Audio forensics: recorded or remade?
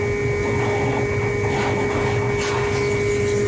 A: recorded